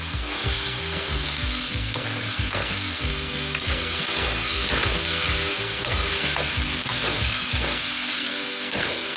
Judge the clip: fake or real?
fake